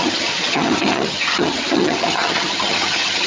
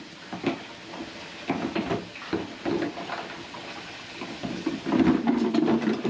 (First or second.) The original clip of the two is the second